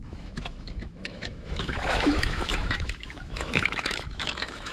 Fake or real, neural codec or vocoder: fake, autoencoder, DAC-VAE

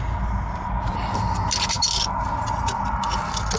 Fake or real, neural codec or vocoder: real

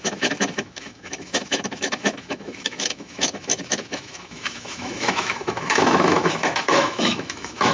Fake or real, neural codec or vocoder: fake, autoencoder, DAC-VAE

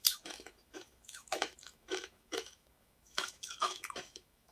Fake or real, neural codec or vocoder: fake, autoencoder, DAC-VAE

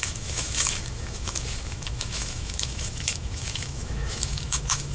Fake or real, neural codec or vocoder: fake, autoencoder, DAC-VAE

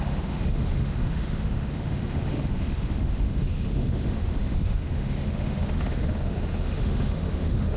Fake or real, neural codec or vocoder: fake, autoencoder, DAC-VAE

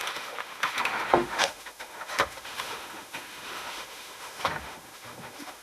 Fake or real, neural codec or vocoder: fake, autoencoder, DAC-VAE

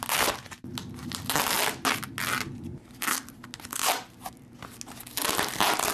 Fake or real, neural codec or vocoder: real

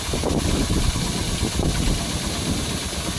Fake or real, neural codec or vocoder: real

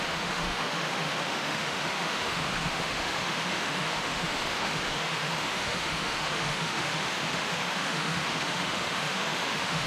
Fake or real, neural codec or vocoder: fake, autoencoder, DAC-VAE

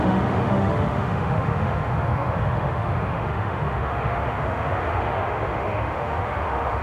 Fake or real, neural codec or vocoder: fake, autoencoder, DAC-VAE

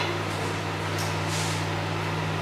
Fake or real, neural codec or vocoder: real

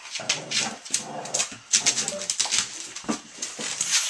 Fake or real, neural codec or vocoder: real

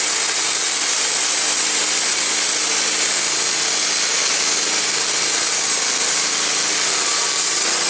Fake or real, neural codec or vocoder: real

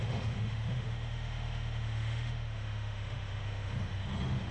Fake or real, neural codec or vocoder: fake, autoencoder, DAC-VAE